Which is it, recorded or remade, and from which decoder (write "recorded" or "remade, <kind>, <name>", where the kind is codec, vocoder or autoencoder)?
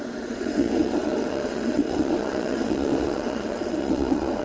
remade, vocoder, WaveNeXt